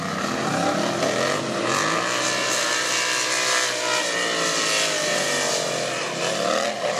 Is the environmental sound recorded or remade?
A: recorded